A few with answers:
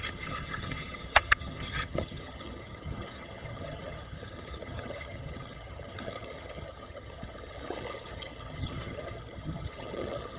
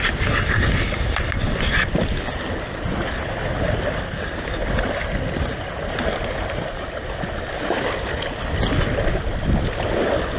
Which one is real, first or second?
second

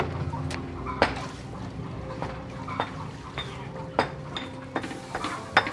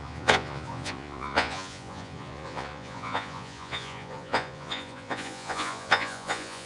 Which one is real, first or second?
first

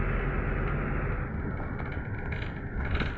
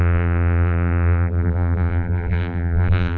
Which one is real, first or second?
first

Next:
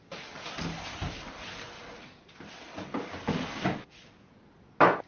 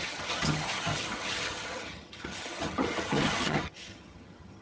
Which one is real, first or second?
first